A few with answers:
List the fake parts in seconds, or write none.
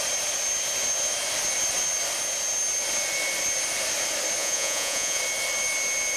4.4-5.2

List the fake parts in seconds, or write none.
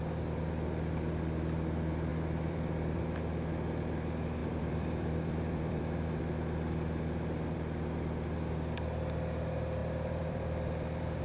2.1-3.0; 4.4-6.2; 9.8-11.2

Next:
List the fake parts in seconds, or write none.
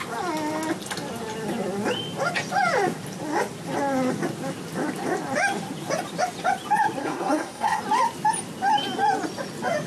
7.0-7.8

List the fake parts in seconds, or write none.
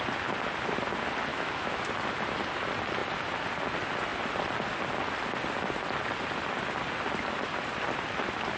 1.3-1.9